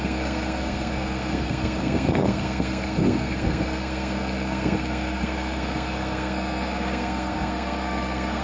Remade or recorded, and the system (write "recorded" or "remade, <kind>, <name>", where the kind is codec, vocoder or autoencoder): remade, codec, SNAC